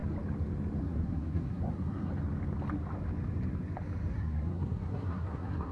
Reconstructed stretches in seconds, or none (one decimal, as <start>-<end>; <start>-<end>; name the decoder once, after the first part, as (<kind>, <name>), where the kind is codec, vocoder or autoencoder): 0.8-2.1 (codec, SNAC); 4.1-5.7